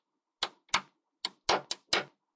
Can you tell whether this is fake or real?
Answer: real